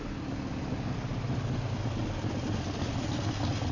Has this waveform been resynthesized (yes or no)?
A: no